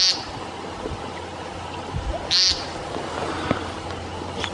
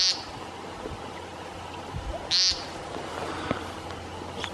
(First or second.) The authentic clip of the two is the second